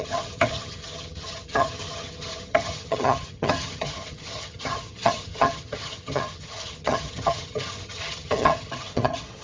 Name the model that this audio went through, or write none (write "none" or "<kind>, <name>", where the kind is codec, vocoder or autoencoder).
vocoder, HiFi-GAN